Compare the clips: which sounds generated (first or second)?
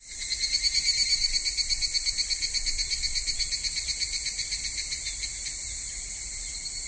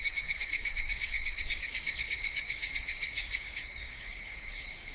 second